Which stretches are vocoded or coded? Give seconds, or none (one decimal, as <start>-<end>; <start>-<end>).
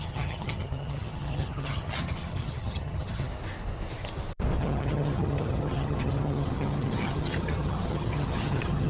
0.0-3.3; 4.6-8.9